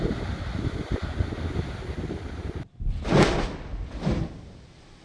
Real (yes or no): yes